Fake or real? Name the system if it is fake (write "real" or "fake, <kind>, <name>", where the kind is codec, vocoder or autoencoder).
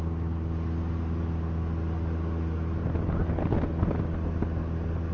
real